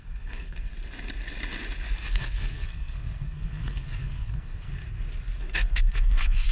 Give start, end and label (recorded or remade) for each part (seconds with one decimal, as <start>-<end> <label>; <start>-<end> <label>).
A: 0.0-0.7 remade; 0.7-2.1 recorded; 2.1-4.7 remade; 4.7-5.4 recorded; 5.4-6.5 remade

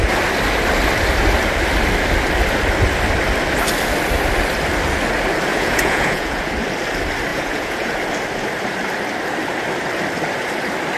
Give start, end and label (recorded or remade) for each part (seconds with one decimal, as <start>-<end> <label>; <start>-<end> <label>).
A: 0.0-5.5 recorded; 5.5-6.5 remade; 6.5-7.3 recorded; 7.3-7.9 remade; 7.9-11.0 recorded

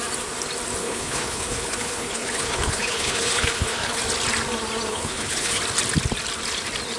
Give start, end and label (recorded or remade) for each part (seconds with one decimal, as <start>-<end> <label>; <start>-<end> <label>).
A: 0.0-0.8 recorded; 0.8-4.0 remade; 4.0-4.9 recorded; 4.9-5.6 remade; 5.6-7.0 recorded

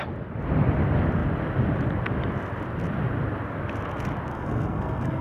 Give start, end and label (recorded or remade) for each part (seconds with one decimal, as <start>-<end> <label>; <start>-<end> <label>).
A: 0.0-4.3 recorded; 4.3-5.2 remade

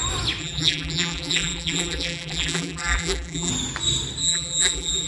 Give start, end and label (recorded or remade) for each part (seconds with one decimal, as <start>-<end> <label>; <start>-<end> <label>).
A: 0.0-0.4 recorded; 0.4-3.5 remade; 3.5-4.2 recorded; 4.2-5.1 remade

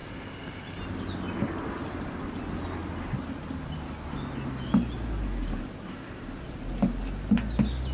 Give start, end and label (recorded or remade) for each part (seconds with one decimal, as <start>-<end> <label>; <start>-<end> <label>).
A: 0.0-7.9 recorded

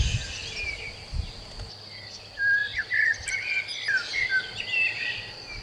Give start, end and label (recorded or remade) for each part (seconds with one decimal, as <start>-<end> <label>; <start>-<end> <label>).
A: 0.0-5.6 recorded

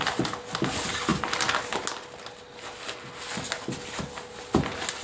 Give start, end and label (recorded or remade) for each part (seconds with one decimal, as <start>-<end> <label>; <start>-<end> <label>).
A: 0.0-5.0 recorded